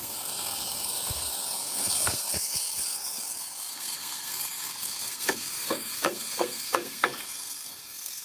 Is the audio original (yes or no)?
no